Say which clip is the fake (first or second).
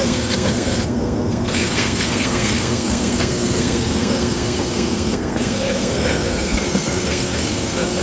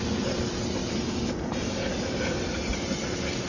first